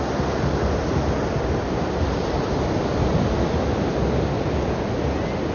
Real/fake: real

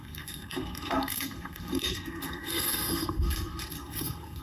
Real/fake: fake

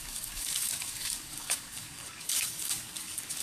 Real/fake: fake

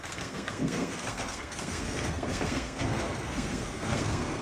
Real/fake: fake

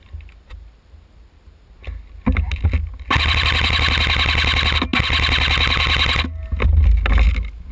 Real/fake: real